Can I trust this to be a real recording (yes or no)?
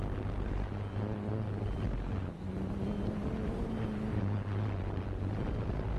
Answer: yes